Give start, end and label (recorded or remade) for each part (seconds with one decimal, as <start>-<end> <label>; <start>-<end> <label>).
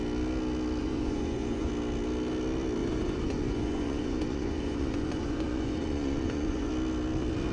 0.0-0.8 recorded; 0.8-1.7 remade; 1.7-2.8 recorded; 2.8-6.7 remade; 6.7-7.5 recorded